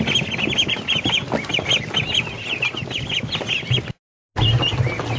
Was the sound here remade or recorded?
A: recorded